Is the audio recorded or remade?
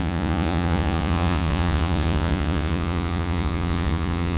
remade